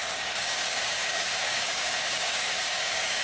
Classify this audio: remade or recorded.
remade